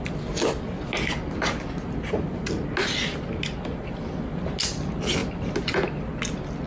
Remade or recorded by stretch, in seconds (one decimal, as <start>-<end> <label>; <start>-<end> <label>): 0.0-6.7 recorded